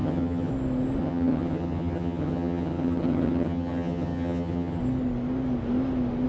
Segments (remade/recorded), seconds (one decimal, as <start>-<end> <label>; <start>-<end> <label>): 0.0-0.5 remade; 0.5-1.0 recorded; 1.0-4.8 remade; 4.8-6.3 recorded

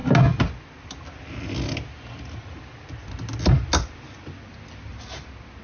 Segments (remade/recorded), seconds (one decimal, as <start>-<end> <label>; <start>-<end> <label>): 0.0-5.6 recorded

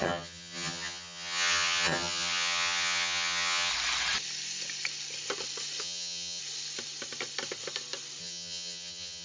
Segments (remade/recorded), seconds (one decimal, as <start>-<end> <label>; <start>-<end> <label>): 0.0-3.7 remade; 3.7-5.8 recorded; 5.8-6.4 remade; 6.4-8.2 recorded; 8.2-9.2 remade

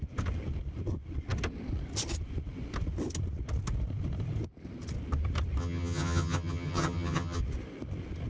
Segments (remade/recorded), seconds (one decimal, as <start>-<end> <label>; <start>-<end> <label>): 0.0-5.6 recorded; 5.6-7.4 remade; 7.4-8.3 recorded